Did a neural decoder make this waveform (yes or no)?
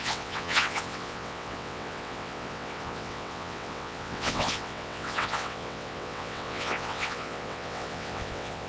yes